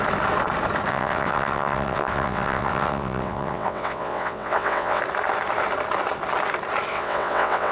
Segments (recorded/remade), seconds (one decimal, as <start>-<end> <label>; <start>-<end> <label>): 0.0-0.9 recorded; 0.9-5.0 remade; 5.0-6.9 recorded; 6.9-7.7 remade